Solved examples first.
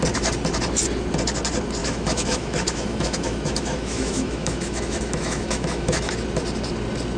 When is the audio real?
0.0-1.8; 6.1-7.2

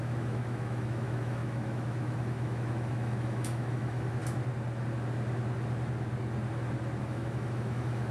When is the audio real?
4.2-7.0

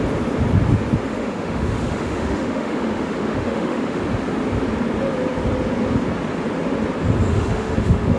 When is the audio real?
0.0-1.1; 4.0-7.3

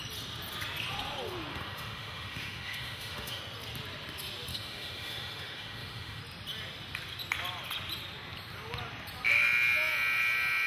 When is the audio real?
0.0-1.5; 3.4-4.5; 6.2-10.7